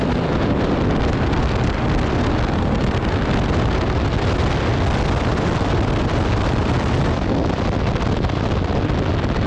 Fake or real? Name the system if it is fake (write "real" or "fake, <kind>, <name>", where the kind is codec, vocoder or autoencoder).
real